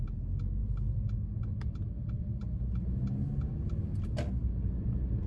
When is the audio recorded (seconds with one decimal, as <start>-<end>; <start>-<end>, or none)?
0.0-5.3